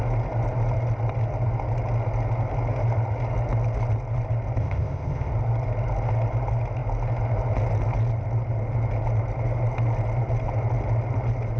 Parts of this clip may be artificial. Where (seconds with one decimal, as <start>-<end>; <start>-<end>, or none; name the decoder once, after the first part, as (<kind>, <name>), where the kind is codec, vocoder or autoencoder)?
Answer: 4.6-5.3 (codec, ZipCodec)